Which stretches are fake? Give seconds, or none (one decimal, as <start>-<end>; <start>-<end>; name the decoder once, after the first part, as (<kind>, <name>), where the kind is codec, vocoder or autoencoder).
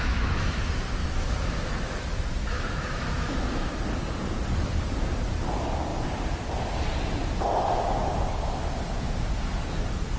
0.0-0.6 (autoencoder, DAC-VAE); 1.0-3.7